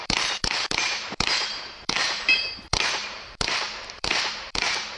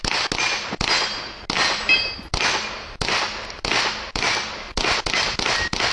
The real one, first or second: second